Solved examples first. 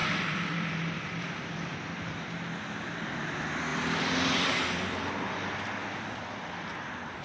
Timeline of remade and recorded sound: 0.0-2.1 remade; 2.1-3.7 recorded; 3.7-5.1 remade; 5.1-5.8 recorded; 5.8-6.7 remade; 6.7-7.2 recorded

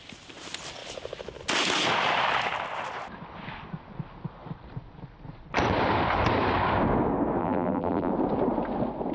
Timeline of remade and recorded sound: 0.0-7.4 recorded; 7.4-8.1 remade; 8.1-9.1 recorded

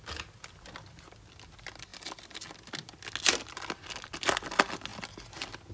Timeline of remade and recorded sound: 0.0-5.7 recorded

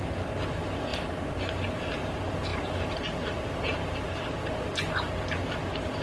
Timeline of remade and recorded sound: 0.0-2.5 recorded; 2.5-4.2 remade; 4.2-6.0 recorded